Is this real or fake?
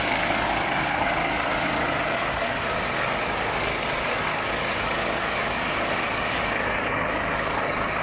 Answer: fake